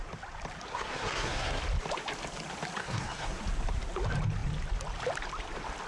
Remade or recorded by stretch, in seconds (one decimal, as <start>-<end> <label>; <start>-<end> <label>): 0.0-0.7 recorded; 0.7-1.6 remade; 1.6-2.8 recorded; 2.8-3.4 remade; 3.4-5.9 recorded